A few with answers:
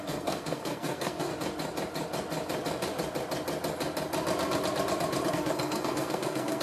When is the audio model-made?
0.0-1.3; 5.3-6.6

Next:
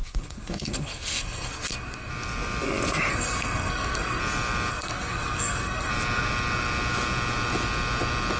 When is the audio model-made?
0.0-2.1; 3.1-4.2; 4.7-5.9

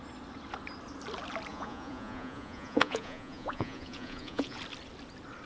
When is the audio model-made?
1.5-4.6

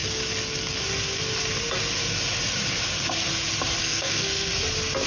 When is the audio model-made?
3.8-4.5